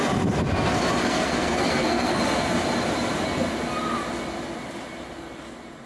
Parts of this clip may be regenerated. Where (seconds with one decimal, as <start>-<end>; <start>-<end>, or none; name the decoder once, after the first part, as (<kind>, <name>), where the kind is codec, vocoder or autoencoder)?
1.0-2.2 (codec, SNAC)

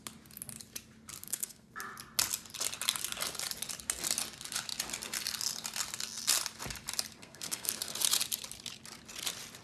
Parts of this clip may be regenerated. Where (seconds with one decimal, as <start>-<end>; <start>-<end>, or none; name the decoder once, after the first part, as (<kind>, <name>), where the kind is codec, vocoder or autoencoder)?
1.2-1.7 (codec, SNAC); 7.2-7.7

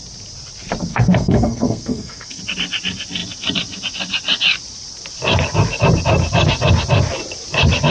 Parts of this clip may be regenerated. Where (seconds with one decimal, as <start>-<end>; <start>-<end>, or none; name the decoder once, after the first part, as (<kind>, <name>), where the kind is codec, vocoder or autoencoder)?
0.9-2.4 (codec, SNAC)